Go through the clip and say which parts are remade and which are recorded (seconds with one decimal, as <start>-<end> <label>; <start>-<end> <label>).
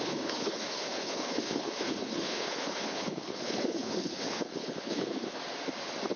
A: 0.0-5.4 remade; 5.4-6.2 recorded